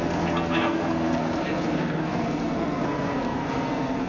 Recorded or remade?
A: remade